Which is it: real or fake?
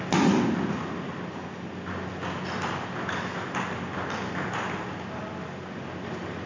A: real